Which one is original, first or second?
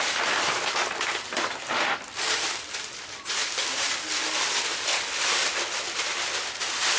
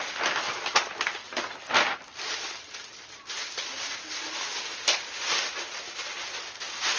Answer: second